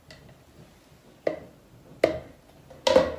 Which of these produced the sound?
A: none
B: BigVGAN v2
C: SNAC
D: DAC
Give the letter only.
A